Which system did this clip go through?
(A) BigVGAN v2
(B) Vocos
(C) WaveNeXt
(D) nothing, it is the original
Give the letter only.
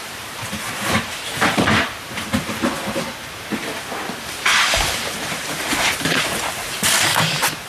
A